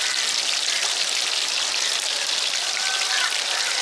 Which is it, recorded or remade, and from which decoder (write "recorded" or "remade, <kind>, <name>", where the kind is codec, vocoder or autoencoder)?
recorded